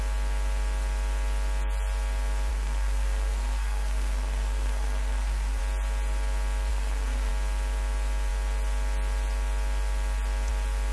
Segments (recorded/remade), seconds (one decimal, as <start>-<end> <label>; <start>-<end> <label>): 0.0-2.5 recorded; 2.5-5.6 remade; 5.6-6.7 recorded; 6.7-7.3 remade; 7.3-10.9 recorded